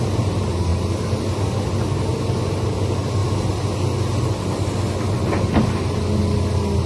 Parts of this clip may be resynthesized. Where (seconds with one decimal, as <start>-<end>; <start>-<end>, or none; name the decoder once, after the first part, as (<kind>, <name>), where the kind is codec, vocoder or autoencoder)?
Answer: none